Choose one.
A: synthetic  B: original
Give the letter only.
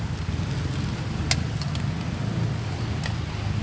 B